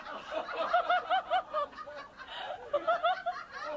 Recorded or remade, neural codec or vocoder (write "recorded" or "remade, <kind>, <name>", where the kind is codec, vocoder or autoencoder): recorded